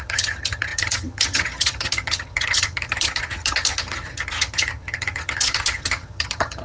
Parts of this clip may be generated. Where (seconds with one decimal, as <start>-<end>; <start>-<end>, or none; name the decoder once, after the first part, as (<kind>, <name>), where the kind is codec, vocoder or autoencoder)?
0.0-6.6 (vocoder, HiFi-GAN)